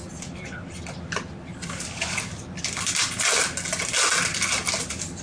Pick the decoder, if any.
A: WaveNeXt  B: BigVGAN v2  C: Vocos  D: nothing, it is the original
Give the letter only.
D